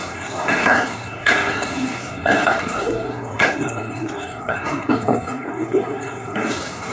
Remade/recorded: remade